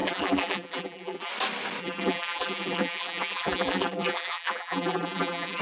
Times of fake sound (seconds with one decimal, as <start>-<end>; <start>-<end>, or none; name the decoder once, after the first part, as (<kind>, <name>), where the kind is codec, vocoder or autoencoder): 0.0-1.3 (vocoder, BigVGAN v2); 1.8-5.6